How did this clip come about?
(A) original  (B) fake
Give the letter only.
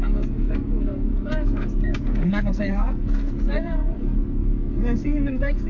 B